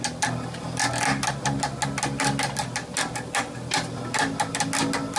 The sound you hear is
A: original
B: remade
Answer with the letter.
A